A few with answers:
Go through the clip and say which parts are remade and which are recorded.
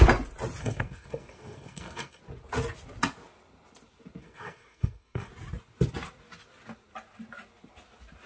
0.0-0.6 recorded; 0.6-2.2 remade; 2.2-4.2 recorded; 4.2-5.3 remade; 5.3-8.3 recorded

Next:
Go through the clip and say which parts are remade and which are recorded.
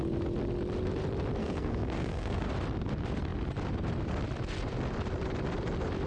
0.0-1.4 recorded; 1.4-2.5 remade; 2.5-6.1 recorded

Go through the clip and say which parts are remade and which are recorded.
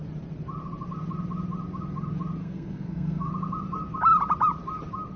0.0-2.4 recorded; 2.4-3.3 remade; 3.3-5.2 recorded